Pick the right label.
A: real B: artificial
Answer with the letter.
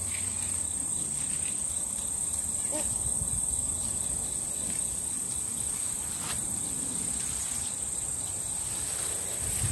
A